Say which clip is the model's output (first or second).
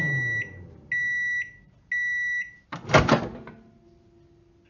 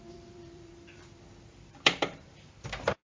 second